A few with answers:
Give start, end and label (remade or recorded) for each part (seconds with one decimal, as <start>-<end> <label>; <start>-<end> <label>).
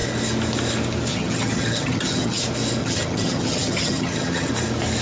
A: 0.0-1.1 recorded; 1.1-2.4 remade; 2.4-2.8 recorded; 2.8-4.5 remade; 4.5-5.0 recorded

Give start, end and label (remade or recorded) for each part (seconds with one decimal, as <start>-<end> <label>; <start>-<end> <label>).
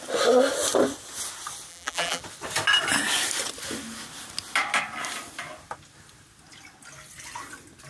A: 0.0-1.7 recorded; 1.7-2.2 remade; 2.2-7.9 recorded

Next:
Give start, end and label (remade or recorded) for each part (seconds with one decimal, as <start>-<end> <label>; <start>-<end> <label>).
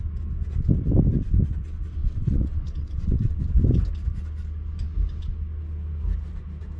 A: 0.0-2.0 recorded; 2.0-3.4 remade; 3.4-6.8 recorded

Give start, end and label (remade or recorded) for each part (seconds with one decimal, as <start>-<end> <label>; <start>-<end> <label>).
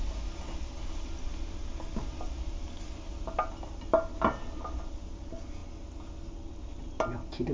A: 0.0-7.5 recorded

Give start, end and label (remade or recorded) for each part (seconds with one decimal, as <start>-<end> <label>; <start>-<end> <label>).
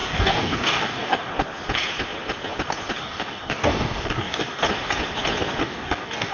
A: 0.0-1.3 remade; 1.3-3.0 recorded; 3.0-4.6 remade; 4.6-5.6 recorded; 5.6-6.3 remade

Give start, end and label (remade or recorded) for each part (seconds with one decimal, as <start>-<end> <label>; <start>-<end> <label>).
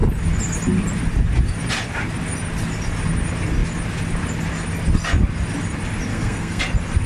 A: 0.0-6.1 recorded; 6.1-6.6 remade; 6.6-7.1 recorded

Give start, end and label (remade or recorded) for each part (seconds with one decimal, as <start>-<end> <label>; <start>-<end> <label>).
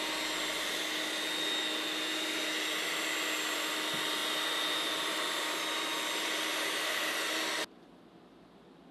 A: 0.0-8.9 recorded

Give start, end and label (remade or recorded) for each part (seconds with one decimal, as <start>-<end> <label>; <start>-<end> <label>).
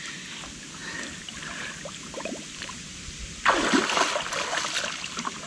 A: 0.0-5.5 recorded